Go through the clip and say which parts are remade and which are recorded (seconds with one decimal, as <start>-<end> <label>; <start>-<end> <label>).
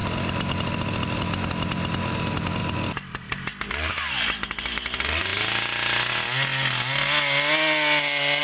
0.0-8.4 recorded